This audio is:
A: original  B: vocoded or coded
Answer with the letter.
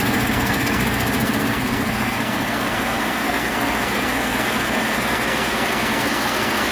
B